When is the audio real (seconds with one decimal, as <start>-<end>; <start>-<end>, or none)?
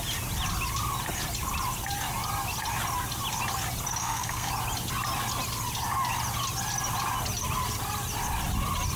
0.0-4.0; 4.5-9.0